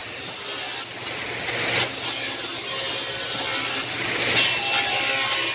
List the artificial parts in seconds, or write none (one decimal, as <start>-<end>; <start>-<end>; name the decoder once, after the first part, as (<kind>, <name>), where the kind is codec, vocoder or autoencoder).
none